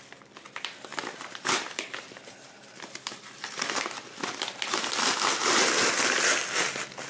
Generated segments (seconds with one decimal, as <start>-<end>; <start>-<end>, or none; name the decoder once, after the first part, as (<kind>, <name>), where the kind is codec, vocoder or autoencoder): 0.0-7.1 (vocoder, BigVGAN v2)

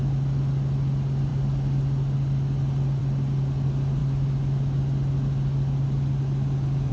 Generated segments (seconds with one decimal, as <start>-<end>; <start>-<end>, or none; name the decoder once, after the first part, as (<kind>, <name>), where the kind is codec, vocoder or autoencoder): none

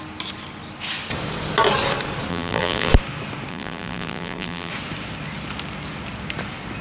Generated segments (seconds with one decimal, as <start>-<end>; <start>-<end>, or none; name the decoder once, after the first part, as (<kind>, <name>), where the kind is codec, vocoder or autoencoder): 2.3-2.9 (vocoder, BigVGAN v2); 3.5-4.7

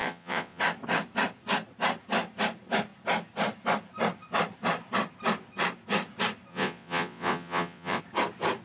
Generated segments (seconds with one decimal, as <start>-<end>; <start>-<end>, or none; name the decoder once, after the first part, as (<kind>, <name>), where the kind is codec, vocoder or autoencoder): 0.0-0.6 (vocoder, WaveNeXt); 6.5-8.0

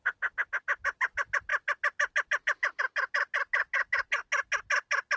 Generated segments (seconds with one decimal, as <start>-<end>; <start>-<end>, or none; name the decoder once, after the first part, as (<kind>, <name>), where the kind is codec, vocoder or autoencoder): none

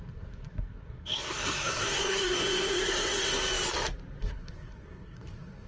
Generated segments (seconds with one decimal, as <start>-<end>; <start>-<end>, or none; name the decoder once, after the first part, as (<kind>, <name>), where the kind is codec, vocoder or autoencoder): 0.0-3.4 (codec, SNAC); 4.2-5.7

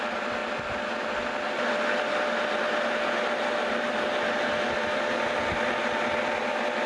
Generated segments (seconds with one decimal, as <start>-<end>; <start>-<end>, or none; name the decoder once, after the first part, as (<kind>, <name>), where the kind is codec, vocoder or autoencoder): none

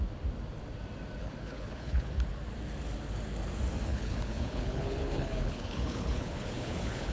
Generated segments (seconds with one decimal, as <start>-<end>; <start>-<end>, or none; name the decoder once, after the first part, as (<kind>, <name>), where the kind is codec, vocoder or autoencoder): 1.2-2.1 (codec, HILCodec); 3.9-7.1